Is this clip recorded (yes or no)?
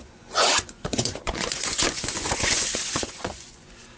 no